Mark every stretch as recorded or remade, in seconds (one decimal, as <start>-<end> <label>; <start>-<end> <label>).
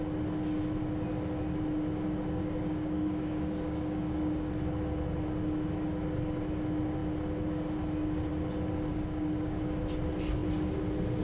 0.0-2.4 recorded; 2.4-4.5 remade; 4.5-8.9 recorded; 8.9-9.6 remade; 9.6-11.2 recorded